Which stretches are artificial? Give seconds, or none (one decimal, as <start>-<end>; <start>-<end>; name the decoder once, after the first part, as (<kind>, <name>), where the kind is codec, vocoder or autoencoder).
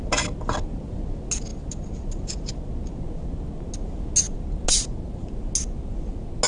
none